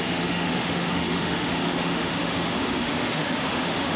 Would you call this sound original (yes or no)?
no